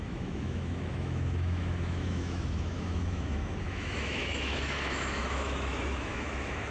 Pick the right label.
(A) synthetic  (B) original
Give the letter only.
A